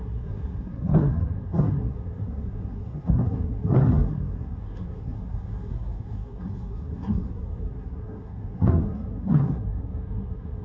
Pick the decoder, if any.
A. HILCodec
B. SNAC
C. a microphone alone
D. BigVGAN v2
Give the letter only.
B